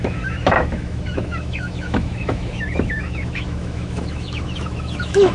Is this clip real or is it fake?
fake